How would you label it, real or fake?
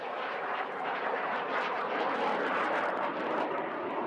fake